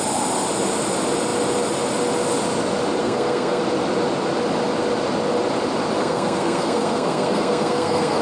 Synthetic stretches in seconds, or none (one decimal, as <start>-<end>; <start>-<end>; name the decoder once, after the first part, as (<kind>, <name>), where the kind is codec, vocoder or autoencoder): 3.0-3.6 (codec, SNAC); 6.0-8.2